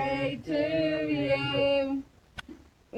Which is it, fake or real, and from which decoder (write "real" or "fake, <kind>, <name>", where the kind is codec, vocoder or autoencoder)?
real